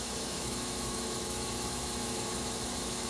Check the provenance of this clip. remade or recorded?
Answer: remade